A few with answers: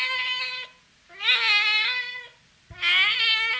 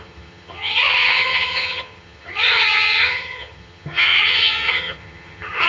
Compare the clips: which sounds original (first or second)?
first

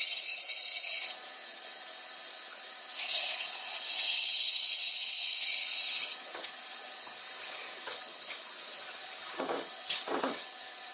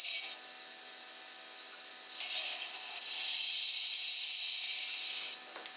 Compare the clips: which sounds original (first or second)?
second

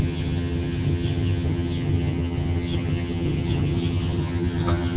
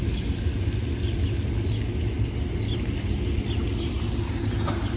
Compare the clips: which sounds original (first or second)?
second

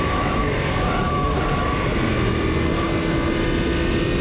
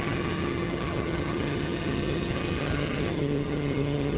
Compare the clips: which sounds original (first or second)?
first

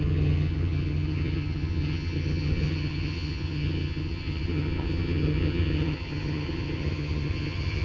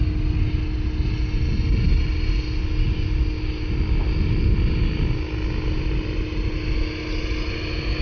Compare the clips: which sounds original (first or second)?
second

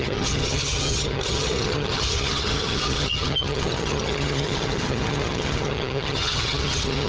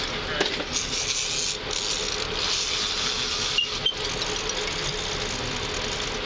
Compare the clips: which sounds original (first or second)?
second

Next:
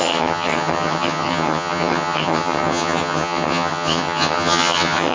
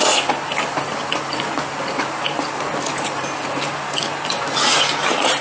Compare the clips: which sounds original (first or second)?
second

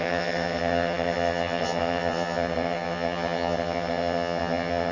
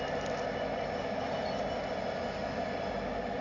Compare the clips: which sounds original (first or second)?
second